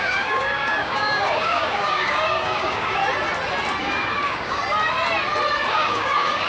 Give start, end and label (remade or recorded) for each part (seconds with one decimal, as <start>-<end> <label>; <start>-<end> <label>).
0.0-3.0 remade; 3.0-3.8 recorded; 3.8-4.6 remade; 4.6-5.7 recorded; 5.7-6.5 remade